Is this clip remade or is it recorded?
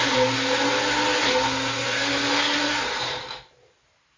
recorded